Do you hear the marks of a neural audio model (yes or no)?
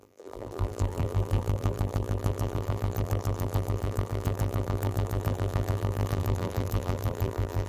yes